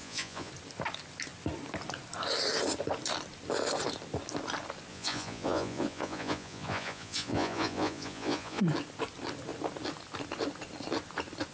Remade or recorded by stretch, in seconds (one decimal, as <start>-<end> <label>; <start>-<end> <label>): 0.0-0.5 remade; 0.5-4.9 recorded; 4.9-8.6 remade; 8.6-11.5 recorded